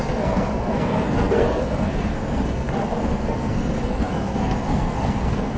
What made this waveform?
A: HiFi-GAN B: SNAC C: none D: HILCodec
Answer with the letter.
B